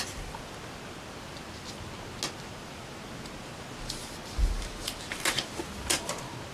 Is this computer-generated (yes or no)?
no